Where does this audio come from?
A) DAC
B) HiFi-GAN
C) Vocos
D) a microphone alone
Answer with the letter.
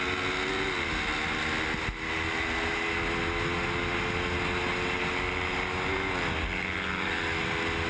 D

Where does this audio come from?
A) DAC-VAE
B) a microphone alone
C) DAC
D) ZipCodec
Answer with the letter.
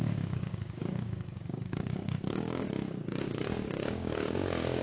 C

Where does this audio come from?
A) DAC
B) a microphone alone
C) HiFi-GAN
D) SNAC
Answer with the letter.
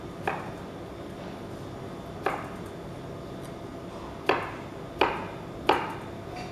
B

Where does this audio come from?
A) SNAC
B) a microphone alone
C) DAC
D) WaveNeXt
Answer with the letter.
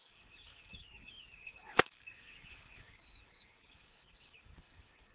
C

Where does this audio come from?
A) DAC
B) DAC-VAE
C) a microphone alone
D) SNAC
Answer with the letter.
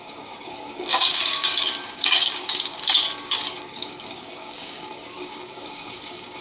A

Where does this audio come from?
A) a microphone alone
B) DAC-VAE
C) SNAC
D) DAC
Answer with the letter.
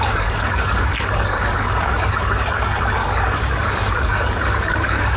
D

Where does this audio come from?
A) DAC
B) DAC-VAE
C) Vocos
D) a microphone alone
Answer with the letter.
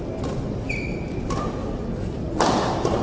D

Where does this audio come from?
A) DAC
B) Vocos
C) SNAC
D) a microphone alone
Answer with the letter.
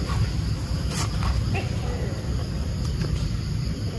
D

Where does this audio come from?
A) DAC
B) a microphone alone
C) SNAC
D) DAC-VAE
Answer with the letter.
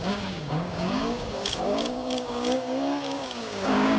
A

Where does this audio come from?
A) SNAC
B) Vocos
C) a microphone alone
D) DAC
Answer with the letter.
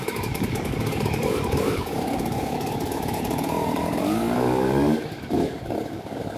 D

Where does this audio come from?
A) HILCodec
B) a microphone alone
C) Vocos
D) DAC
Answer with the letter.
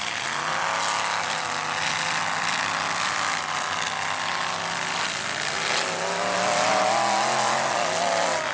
B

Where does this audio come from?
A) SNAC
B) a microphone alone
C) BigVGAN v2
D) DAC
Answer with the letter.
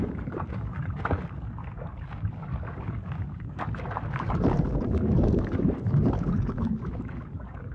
D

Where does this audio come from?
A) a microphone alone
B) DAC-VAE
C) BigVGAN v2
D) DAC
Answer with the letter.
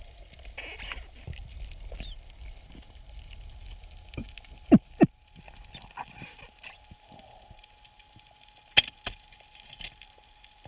A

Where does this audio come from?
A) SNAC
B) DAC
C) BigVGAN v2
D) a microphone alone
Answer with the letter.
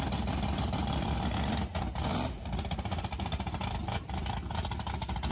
D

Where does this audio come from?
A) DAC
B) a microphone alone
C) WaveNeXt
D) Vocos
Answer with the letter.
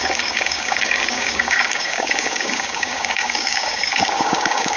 A